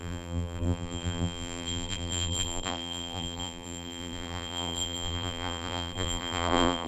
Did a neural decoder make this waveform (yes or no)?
yes